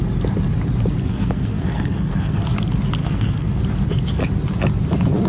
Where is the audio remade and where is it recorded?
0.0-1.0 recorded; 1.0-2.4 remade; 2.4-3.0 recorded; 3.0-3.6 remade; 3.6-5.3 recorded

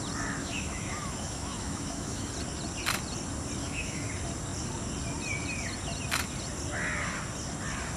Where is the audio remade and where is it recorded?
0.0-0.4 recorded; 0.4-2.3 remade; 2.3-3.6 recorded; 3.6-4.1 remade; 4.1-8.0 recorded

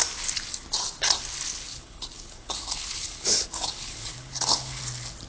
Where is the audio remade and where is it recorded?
0.0-1.7 recorded; 1.7-4.8 remade; 4.8-5.3 recorded

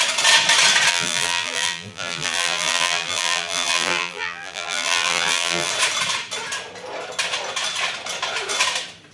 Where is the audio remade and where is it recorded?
0.0-0.9 recorded; 0.9-5.7 remade; 5.7-9.1 recorded

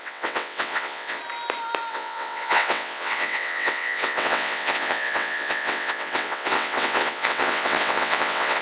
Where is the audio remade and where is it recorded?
0.0-1.2 remade; 1.2-1.9 recorded; 1.9-8.6 remade

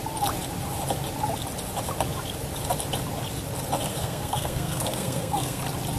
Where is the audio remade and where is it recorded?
0.0-3.9 recorded; 3.9-5.6 remade; 5.6-6.0 recorded